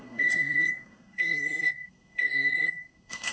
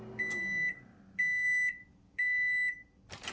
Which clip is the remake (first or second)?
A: first